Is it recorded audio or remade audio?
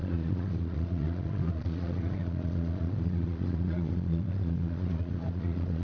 remade